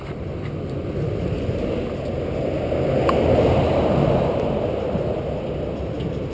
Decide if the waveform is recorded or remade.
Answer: recorded